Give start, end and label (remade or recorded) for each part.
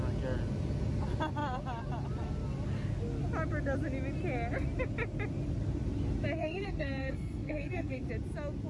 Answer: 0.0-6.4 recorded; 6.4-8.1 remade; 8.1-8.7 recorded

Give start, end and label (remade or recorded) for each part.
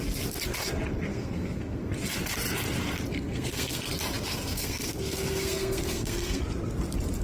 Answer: 0.0-1.1 recorded; 1.1-1.9 remade; 1.9-3.1 recorded; 3.1-3.8 remade; 3.8-4.3 recorded; 4.3-6.4 remade; 6.4-7.2 recorded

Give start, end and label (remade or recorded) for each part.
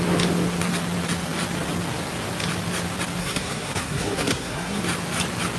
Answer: 0.0-3.2 recorded; 3.2-4.8 remade; 4.8-5.6 recorded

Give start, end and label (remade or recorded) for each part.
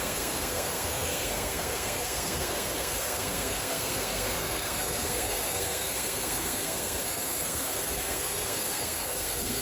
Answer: 0.0-9.6 remade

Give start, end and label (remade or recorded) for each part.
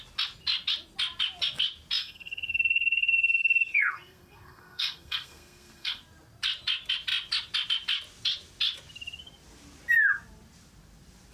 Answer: 0.0-2.0 recorded; 2.0-6.0 remade; 6.0-11.3 recorded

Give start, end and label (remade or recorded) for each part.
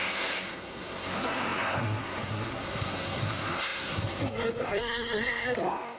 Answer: 0.0-6.0 remade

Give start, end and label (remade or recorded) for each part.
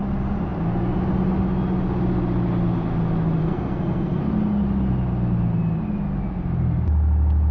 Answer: 0.0-3.4 recorded; 3.4-4.2 remade; 4.2-7.5 recorded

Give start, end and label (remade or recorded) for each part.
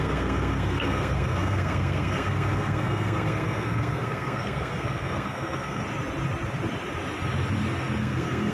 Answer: 0.0-5.8 remade; 5.8-8.0 recorded; 8.0-8.5 remade